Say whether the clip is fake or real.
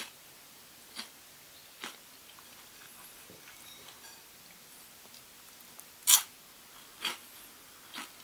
real